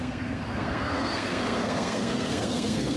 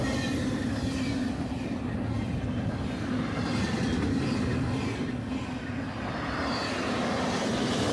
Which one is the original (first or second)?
second